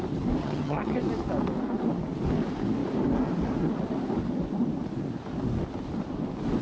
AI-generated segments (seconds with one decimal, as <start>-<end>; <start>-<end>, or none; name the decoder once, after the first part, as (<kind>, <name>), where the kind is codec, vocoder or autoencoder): 0.4-1.0 (vocoder, HiFi-GAN)